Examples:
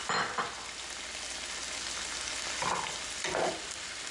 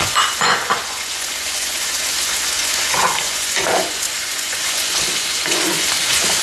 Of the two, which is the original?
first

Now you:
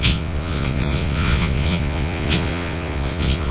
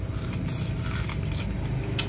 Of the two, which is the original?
second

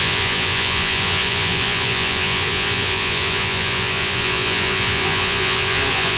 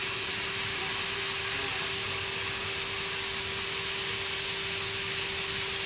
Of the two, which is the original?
second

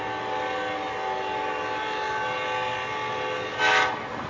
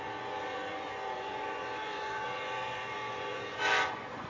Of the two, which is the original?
first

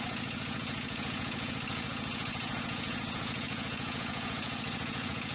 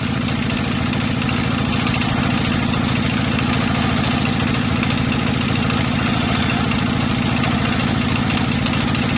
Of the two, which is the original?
second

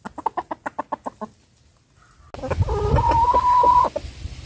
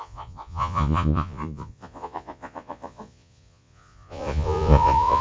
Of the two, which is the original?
first